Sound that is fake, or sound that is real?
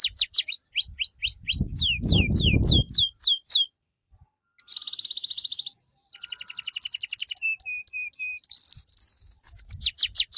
real